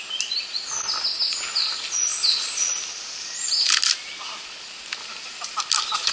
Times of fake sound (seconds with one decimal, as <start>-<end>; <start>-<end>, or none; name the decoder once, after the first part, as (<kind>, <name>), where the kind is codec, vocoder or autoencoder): none